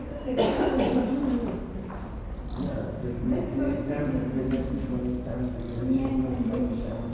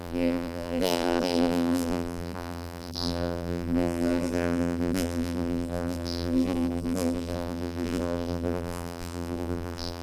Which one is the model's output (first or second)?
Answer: second